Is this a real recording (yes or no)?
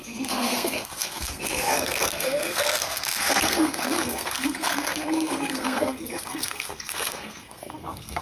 no